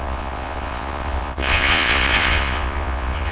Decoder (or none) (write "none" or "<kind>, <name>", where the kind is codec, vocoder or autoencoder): vocoder, Vocos